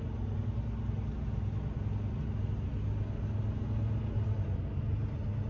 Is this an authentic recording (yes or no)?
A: yes